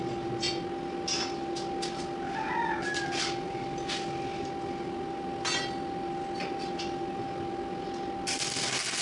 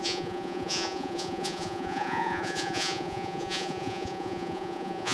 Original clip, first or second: first